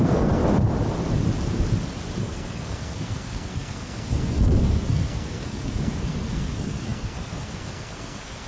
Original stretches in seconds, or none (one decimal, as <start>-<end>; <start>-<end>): 0.4-2.2